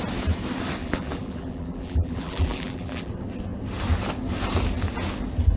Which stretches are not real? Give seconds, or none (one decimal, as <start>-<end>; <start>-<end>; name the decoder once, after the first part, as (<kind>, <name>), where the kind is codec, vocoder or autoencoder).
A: 0.8-3.1 (vocoder, BigVGAN v2)